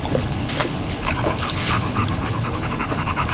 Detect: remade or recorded remade